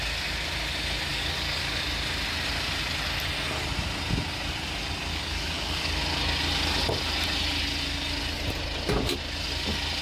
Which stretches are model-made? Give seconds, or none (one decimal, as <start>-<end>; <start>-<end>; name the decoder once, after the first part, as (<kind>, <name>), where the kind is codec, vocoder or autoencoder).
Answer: 1.1-1.8 (codec, DAC); 5.1-6.0